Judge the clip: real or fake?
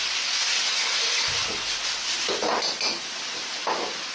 real